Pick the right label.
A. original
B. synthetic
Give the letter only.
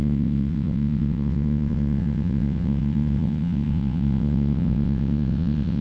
B